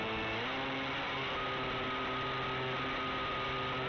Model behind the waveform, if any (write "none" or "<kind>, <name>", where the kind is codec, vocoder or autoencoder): none